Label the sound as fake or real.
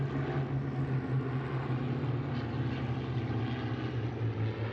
real